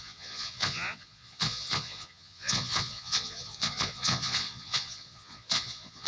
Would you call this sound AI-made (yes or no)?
yes